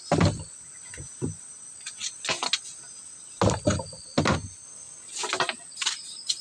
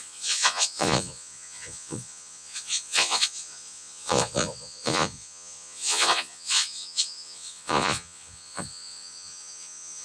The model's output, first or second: second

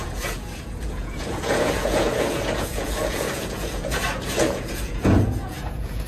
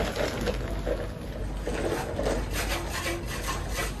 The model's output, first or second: first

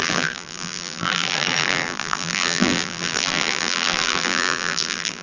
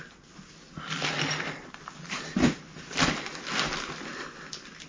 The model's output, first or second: first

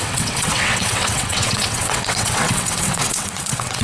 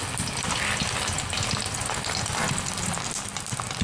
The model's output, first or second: first